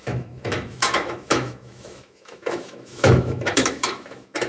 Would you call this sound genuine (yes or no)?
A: no